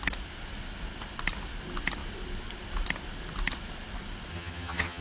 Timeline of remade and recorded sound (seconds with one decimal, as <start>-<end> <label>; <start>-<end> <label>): 0.0-4.3 recorded; 4.3-5.0 remade